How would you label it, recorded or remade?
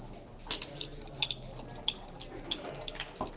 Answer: recorded